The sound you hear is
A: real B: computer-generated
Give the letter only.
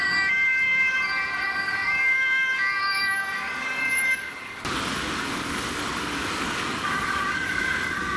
B